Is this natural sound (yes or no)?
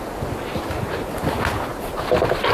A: yes